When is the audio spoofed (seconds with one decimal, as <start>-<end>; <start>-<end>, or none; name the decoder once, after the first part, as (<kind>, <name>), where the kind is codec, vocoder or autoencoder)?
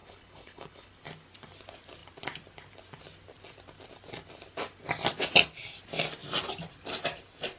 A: 0.0-0.9 (codec, HILCodec)